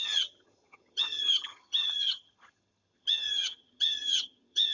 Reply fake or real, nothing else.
fake